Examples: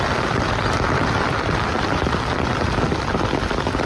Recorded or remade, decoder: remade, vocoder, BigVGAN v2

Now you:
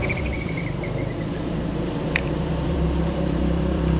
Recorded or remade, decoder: remade, vocoder, BigVGAN v2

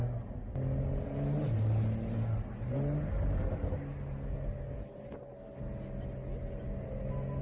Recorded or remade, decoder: recorded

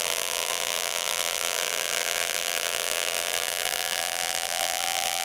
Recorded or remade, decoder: remade, vocoder, BigVGAN v2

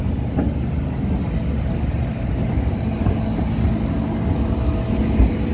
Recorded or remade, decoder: recorded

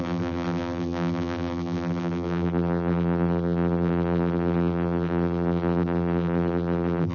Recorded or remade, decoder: remade, vocoder, BigVGAN v2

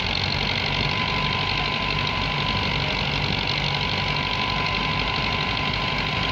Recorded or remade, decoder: recorded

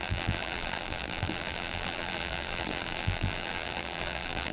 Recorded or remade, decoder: remade, vocoder, BigVGAN v2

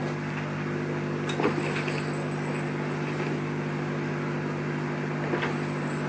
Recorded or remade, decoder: recorded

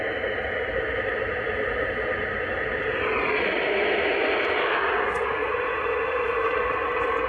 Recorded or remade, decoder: recorded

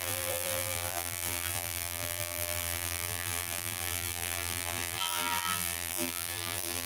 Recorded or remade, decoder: remade, vocoder, BigVGAN v2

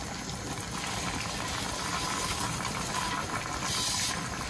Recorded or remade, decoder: recorded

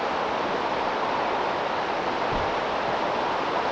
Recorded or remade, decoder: remade, vocoder, BigVGAN v2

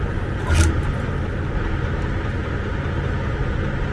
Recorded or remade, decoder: recorded